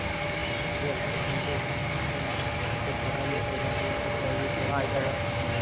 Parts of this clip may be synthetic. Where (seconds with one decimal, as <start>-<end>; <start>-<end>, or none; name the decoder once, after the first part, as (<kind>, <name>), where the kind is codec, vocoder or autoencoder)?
none